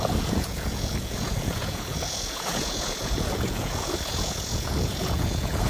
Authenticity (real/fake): fake